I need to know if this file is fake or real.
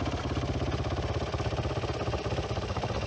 real